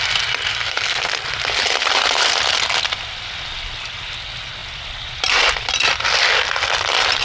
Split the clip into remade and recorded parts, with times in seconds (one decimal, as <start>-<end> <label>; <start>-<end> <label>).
0.0-0.5 recorded; 0.5-1.1 remade; 1.1-7.2 recorded